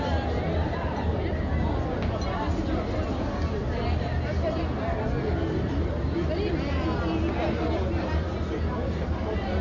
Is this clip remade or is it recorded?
recorded